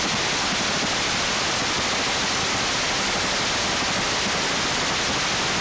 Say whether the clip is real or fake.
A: real